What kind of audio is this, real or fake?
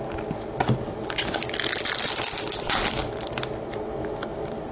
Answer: real